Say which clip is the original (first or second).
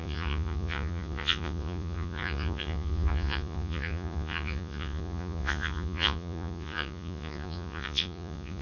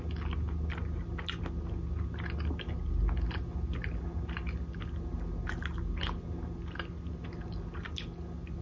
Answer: second